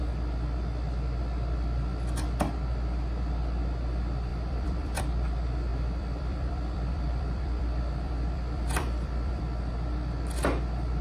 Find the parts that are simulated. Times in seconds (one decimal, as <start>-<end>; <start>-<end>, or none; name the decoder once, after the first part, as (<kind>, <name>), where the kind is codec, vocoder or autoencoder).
4.3-5.0 (vocoder, BigVGAN v2); 5.7-9.4